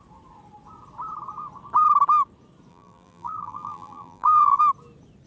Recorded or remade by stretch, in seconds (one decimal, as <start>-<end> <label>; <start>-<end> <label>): 0.0-2.7 recorded; 2.7-4.6 remade; 4.6-5.3 recorded